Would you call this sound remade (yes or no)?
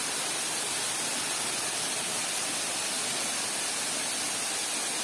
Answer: no